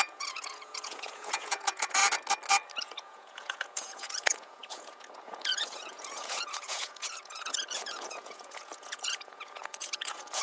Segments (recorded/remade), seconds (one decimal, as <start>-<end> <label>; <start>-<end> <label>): 0.0-2.0 remade; 2.0-2.8 recorded; 2.8-10.4 remade